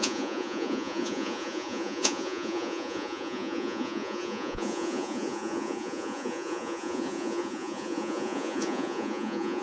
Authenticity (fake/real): fake